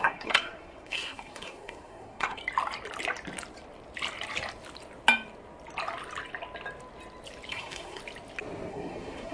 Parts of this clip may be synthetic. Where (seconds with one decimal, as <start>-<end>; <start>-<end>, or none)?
0.0-2.4; 7.5-8.0; 8.7-9.3